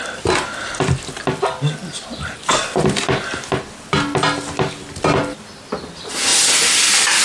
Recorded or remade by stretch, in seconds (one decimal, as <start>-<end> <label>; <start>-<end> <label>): 0.0-7.2 recorded